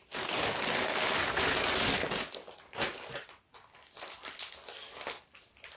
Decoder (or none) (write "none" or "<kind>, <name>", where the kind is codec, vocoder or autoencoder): none